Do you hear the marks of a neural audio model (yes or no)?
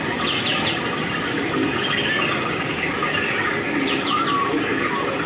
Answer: no